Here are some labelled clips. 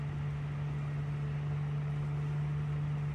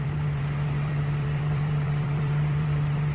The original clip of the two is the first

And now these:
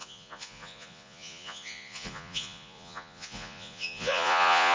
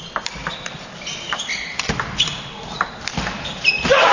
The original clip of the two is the second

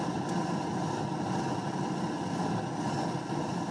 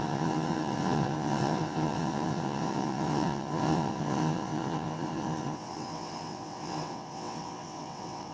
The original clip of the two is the first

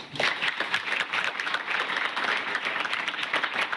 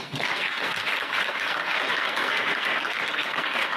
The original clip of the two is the first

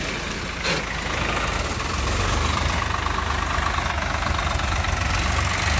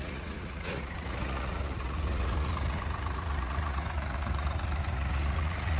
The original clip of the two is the first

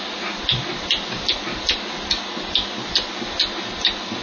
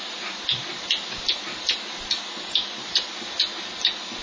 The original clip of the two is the first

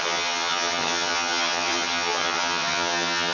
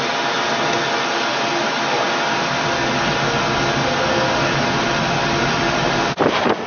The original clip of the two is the second